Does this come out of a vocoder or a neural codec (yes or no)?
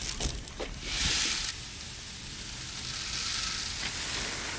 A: no